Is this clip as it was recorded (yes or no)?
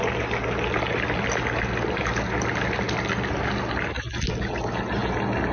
yes